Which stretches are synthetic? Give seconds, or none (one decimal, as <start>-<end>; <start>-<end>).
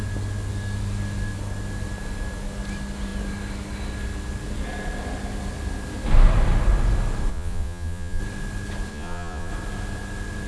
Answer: 7.3-8.2; 8.9-9.5